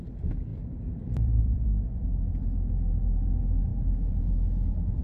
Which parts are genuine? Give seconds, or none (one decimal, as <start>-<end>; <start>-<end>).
none